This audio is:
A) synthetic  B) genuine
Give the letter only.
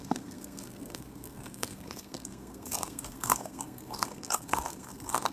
A